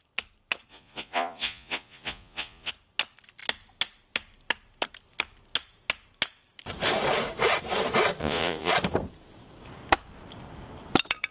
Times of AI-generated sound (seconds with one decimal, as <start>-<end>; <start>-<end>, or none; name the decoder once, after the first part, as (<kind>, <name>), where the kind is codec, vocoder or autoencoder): 0.7-2.7 (vocoder, Vocos); 8.2-8.7